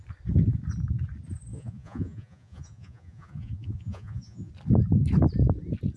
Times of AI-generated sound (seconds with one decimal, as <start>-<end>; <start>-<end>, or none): 1.5-4.5